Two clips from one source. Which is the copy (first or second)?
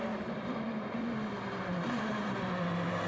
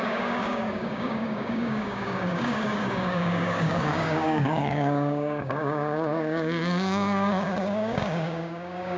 second